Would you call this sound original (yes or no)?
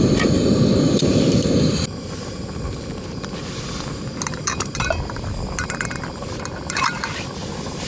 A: no